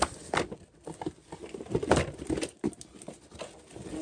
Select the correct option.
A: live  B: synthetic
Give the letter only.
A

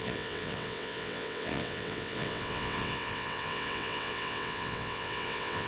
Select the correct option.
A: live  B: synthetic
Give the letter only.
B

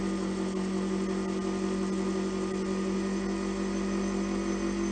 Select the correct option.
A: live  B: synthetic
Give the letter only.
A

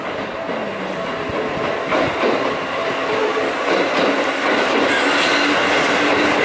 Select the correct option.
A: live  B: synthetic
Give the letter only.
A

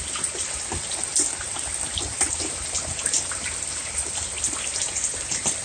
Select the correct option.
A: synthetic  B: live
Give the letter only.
B